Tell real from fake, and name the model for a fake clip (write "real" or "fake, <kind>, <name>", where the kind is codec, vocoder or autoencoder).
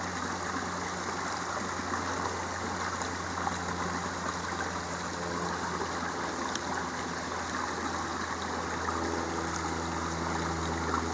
real